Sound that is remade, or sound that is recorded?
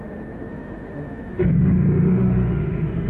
remade